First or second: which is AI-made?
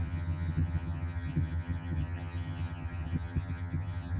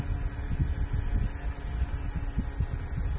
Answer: first